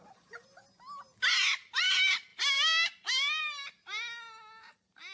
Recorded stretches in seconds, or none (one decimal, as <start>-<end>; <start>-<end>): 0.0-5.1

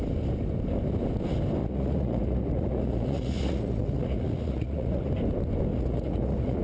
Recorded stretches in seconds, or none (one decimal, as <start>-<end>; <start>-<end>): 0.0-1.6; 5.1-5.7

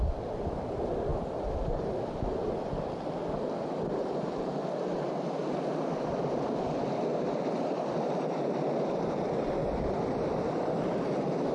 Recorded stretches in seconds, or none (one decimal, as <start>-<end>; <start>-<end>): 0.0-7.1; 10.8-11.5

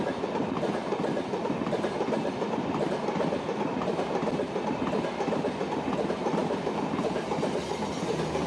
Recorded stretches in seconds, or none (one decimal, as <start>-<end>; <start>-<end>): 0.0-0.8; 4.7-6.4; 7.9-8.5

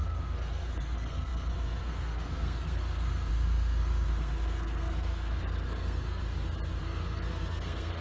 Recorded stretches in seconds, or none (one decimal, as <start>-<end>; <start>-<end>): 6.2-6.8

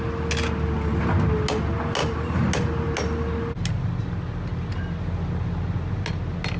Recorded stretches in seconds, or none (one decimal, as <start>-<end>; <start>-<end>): 0.0-6.6

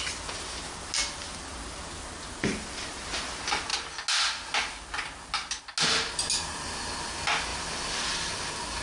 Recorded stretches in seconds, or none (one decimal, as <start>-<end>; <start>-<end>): 0.0-7.5; 8.4-8.8